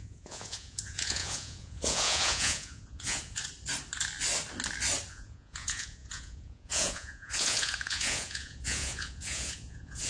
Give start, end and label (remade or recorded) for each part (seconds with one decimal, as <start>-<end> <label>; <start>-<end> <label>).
0.0-3.4 remade; 3.4-5.1 recorded; 5.1-10.1 remade